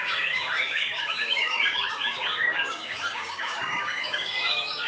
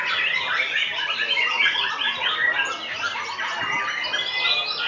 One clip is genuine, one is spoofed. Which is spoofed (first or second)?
first